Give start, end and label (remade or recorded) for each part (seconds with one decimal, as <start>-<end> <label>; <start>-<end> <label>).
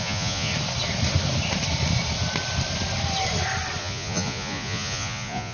0.0-0.5 remade; 0.5-3.8 recorded; 3.8-5.5 remade